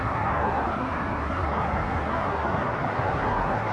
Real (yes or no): no